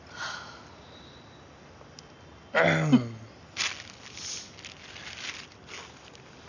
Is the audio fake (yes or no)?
no